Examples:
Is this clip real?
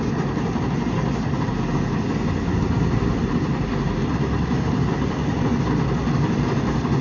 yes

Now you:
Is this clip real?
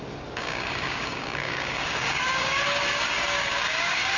no